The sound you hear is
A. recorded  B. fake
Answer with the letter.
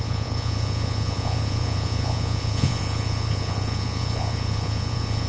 B